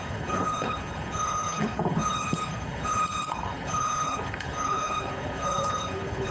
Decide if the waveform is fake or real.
fake